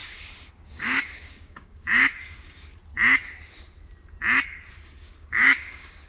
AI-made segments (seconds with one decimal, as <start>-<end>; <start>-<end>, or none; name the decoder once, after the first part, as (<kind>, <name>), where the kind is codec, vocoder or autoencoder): 0.0-2.7 (codec, DAC); 4.8-6.1